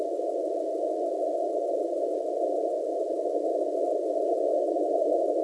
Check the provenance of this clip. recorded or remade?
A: recorded